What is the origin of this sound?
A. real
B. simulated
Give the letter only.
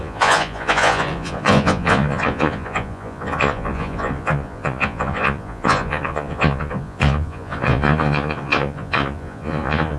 B